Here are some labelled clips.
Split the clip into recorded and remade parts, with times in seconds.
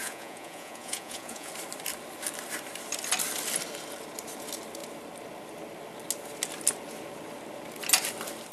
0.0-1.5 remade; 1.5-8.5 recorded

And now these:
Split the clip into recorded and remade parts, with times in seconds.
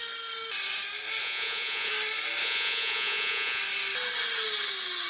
0.0-1.2 recorded; 1.2-1.9 remade; 1.9-2.4 recorded; 2.4-3.6 remade; 3.6-5.1 recorded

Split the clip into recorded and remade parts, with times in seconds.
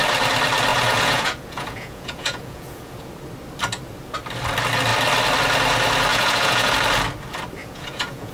0.0-0.7 recorded; 0.7-3.1 remade; 3.1-6.1 recorded; 6.1-6.7 remade; 6.7-7.6 recorded; 7.6-8.3 remade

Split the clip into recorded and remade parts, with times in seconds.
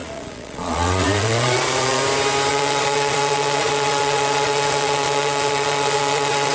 0.0-2.0 remade; 2.0-2.5 recorded; 2.5-6.5 remade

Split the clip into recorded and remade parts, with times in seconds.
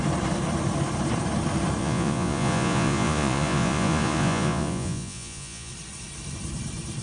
0.0-1.8 recorded; 1.8-5.7 remade; 5.7-7.0 recorded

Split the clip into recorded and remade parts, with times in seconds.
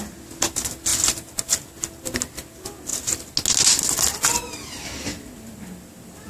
0.0-6.3 recorded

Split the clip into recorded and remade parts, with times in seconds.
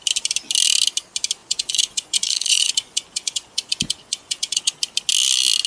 0.0-1.4 recorded; 1.4-4.8 remade; 4.8-5.7 recorded